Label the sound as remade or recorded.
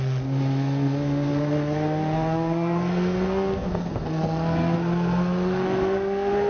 remade